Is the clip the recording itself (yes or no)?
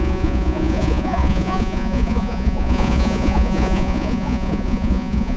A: no